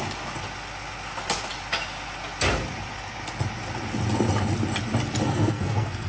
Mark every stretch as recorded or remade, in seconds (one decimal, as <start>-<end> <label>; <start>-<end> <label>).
0.0-5.2 recorded; 5.2-6.1 remade